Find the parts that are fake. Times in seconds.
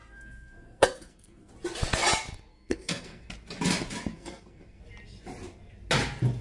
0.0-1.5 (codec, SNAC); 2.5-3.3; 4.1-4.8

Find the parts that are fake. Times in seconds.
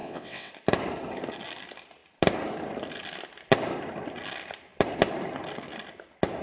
0.0-0.5 (vocoder, WaveNeXt)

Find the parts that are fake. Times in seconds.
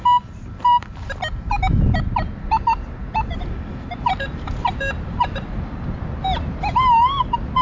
none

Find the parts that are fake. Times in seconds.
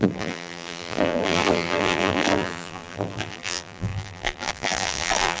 0.0-5.4 (vocoder, BigVGAN v2)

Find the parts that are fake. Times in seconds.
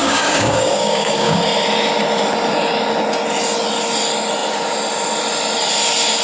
0.0-1.4 (codec, DAC)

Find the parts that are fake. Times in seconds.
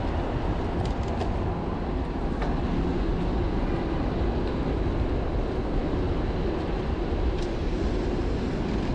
2.9-3.7 (vocoder, Vocos)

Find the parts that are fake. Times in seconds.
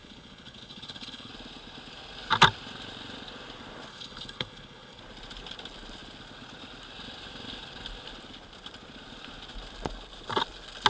0.0-1.3 (codec, HILCodec); 3.9-5.0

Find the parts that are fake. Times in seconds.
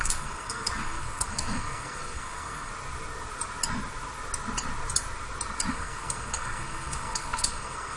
0.0-2.7 (codec, SNAC); 5.7-8.0